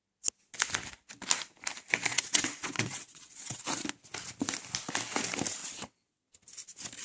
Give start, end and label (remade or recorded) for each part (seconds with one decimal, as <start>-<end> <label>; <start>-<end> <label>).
0.0-2.1 recorded; 2.1-3.6 remade; 3.6-5.6 recorded; 5.6-6.2 remade; 6.2-7.0 recorded